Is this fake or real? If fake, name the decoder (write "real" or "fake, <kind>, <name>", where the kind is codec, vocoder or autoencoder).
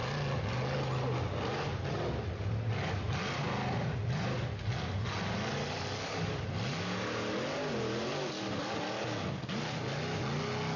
real